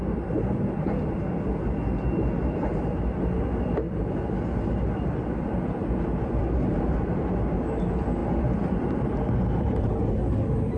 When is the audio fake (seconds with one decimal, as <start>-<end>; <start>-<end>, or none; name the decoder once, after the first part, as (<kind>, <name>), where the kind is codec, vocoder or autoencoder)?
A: none